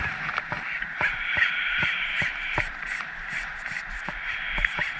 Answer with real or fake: fake